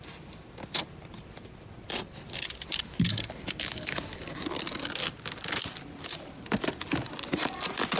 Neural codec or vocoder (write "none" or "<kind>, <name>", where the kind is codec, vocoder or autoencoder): none